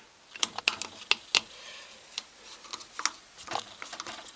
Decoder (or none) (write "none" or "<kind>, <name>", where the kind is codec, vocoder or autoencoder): none